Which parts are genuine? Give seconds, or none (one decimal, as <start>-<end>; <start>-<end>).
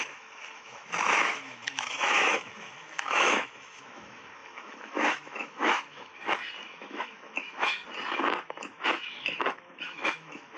6.1-6.7; 7.8-8.6